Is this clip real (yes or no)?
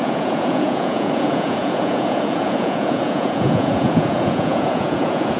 no